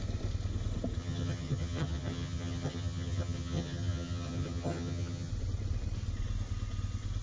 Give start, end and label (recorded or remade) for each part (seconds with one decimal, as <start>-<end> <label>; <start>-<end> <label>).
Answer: 0.0-1.0 recorded; 1.0-5.3 remade; 5.3-7.2 recorded